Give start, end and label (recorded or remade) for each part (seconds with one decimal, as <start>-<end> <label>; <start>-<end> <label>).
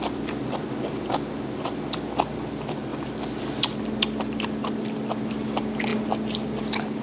0.0-7.0 recorded